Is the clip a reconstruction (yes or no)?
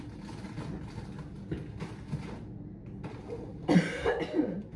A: no